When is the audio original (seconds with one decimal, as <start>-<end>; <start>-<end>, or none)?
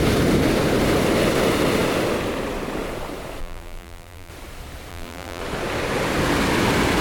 0.0-3.4; 4.3-4.9; 5.4-7.0